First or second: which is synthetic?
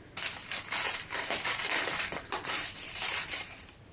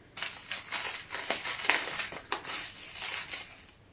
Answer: first